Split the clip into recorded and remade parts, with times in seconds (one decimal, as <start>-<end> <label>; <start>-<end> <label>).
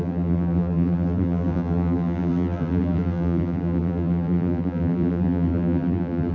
0.0-6.3 remade